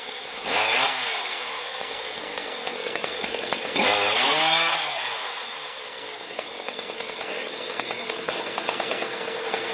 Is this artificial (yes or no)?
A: yes